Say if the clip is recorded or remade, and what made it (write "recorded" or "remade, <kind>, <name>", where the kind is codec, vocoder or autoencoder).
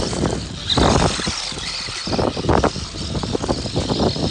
recorded